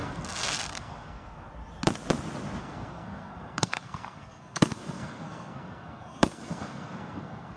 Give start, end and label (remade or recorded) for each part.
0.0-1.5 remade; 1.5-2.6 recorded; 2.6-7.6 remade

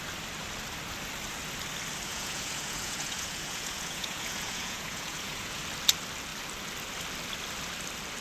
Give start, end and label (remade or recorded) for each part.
0.0-2.1 recorded; 2.1-5.6 remade; 5.6-8.2 recorded

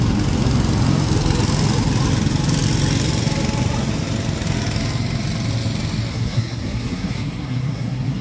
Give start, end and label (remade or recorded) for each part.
0.0-6.1 recorded; 6.1-8.2 remade

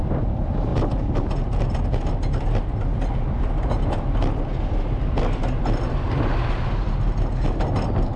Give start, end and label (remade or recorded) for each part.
0.0-8.2 recorded

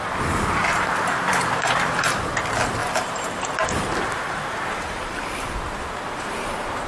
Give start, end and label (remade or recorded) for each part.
0.0-0.6 recorded; 0.6-2.4 remade; 2.4-2.8 recorded; 2.8-5.6 remade; 5.6-6.9 recorded

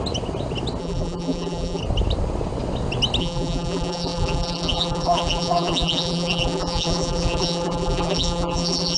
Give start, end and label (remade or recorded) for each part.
0.0-0.8 recorded; 0.8-1.8 remade; 1.8-3.2 recorded; 3.2-9.0 remade

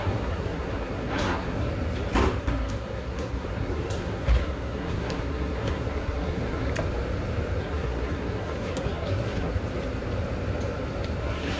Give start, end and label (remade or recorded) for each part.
0.0-1.7 remade; 1.7-2.4 recorded; 2.4-6.7 remade; 6.7-7.6 recorded; 7.6-9.5 remade; 9.5-11.2 recorded; 11.2-11.6 remade

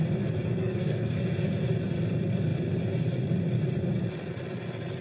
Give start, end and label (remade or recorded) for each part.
0.0-0.6 recorded; 0.6-1.2 remade; 1.2-5.0 recorded